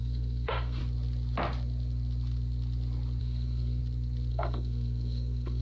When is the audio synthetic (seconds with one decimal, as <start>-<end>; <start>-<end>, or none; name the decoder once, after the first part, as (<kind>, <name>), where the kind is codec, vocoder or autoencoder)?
0.0-0.8 (codec, SNAC); 3.2-3.8; 4.3-5.6